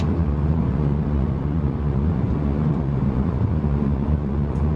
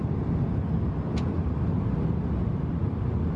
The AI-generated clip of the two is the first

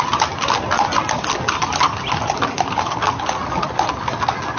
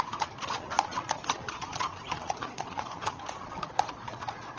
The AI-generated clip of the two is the second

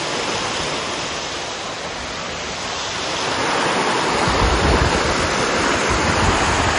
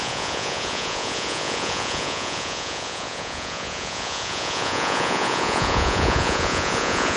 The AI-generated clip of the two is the second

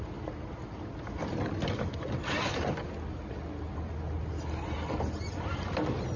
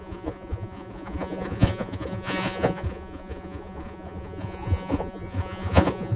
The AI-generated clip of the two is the second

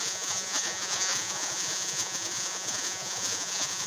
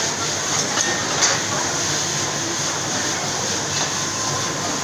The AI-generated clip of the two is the first